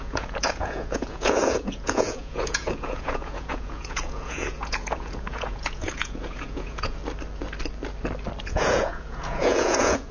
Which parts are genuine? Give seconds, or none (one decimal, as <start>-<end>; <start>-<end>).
7.0-8.4

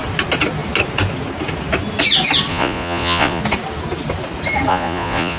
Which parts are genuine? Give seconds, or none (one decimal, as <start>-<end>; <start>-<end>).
0.0-2.5; 3.4-4.7

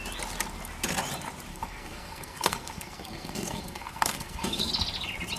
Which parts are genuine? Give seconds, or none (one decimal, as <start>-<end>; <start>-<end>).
0.0-1.5; 4.7-5.4

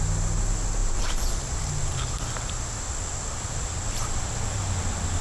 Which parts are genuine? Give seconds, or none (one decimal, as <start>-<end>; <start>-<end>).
0.0-5.2

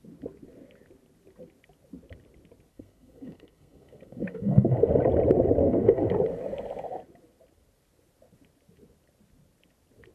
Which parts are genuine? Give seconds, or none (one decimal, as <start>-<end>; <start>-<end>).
0.0-2.7; 4.9-5.6; 6.1-10.1

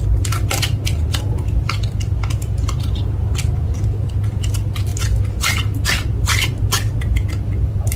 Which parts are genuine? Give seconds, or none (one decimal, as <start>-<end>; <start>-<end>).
0.0-8.0

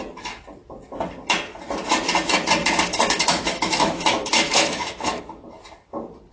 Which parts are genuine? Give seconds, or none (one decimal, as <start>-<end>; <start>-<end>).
0.0-2.9; 5.2-6.3